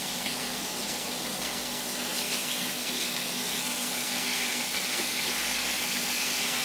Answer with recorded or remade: remade